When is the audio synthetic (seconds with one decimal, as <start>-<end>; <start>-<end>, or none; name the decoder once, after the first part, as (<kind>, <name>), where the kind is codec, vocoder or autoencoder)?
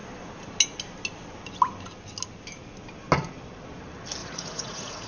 4.2-5.1 (vocoder, Vocos)